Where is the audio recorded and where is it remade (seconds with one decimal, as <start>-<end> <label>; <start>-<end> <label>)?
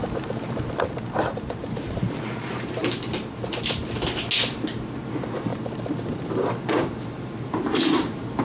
0.0-3.8 remade; 3.8-5.5 recorded; 5.5-8.4 remade